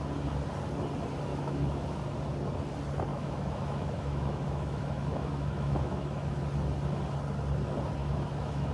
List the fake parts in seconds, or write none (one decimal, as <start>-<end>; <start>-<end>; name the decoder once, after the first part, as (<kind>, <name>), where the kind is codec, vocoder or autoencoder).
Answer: 1.3-2.0 (autoencoder, DAC-VAE); 3.1-6.4; 8.0-8.7